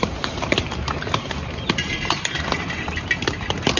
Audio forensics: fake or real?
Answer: fake